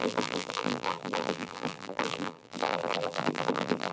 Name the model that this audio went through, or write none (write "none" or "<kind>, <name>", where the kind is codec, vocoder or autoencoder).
vocoder, BigVGAN v2